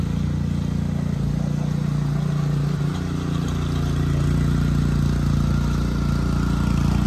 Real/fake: real